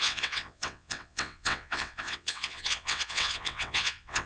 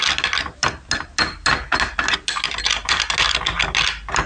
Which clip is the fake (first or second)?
first